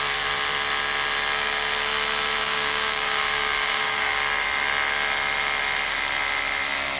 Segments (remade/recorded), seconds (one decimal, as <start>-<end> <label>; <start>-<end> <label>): 0.0-2.4 recorded; 2.4-4.2 remade; 4.2-7.0 recorded